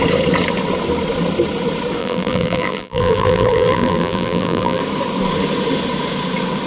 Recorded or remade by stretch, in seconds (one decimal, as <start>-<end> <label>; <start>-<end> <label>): 0.0-2.0 recorded; 2.0-4.8 remade; 4.8-6.7 recorded